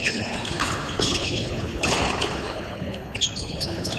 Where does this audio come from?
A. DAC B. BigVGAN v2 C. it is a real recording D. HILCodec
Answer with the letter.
D